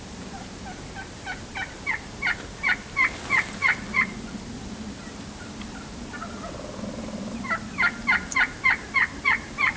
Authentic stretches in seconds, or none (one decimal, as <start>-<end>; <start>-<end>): none